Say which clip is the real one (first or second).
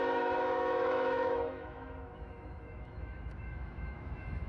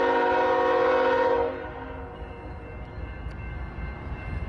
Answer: second